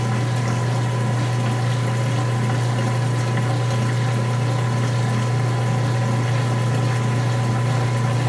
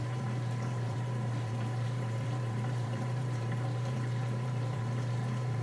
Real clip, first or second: first